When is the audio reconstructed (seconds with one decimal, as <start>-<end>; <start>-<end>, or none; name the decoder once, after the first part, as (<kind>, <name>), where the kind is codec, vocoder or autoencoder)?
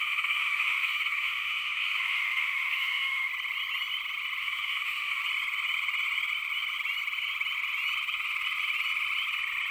0.0-3.3 (autoencoder, DAC-VAE); 4.4-5.2